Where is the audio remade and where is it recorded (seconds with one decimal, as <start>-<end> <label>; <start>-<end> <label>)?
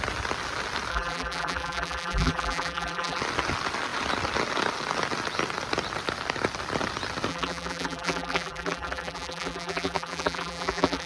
0.0-0.9 recorded; 0.9-3.2 remade; 3.2-7.3 recorded; 7.3-11.1 remade